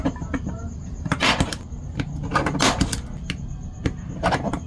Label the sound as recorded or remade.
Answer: recorded